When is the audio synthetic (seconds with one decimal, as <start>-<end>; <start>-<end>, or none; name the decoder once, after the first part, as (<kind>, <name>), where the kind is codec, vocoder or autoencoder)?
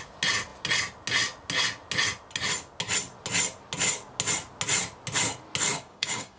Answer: 5.7-6.4 (codec, DAC)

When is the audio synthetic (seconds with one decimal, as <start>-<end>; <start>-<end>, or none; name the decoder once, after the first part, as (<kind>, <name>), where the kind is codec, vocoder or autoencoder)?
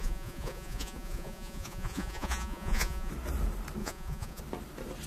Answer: 0.0-3.1 (vocoder, Vocos); 3.8-4.4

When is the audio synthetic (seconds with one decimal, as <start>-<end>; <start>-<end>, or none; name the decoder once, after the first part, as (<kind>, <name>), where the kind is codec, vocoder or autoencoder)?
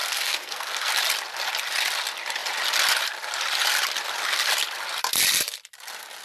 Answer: 0.0-0.9 (codec, SNAC)